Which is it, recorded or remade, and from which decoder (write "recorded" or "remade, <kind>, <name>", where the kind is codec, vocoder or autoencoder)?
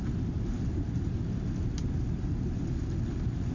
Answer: recorded